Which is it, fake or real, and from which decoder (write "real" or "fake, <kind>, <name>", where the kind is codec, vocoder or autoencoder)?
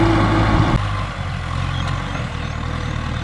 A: real